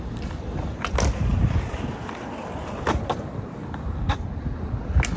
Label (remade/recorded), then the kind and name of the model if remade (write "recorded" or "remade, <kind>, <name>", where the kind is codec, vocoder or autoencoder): recorded